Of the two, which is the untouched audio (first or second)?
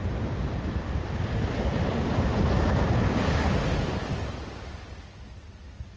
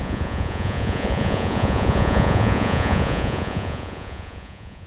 first